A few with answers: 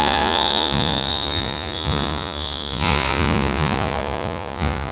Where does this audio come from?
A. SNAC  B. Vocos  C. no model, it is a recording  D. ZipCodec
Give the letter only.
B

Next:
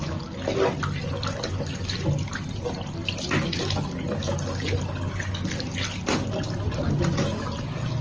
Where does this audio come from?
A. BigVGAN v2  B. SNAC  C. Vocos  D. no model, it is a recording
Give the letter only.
D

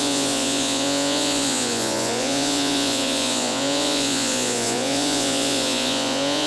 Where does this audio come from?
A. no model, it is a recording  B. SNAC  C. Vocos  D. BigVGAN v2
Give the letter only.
C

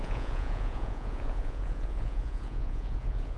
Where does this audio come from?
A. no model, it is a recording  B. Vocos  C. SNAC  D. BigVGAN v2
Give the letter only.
B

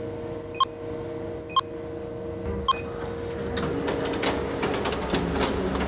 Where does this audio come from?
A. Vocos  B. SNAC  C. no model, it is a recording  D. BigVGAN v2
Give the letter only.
C